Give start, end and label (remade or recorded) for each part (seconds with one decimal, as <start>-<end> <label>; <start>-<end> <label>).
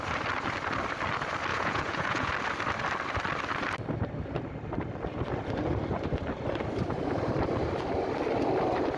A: 0.0-1.5 recorded; 1.5-2.3 remade; 2.3-9.0 recorded